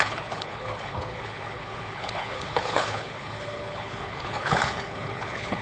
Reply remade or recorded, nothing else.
remade